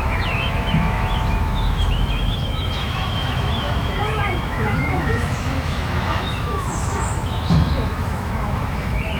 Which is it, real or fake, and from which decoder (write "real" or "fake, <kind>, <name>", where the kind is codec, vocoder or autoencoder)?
fake, autoencoder, DAC-VAE